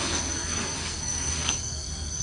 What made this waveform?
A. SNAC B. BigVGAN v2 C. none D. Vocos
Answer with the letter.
A